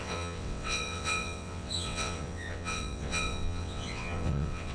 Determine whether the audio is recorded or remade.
remade